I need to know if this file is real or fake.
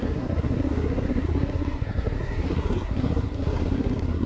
fake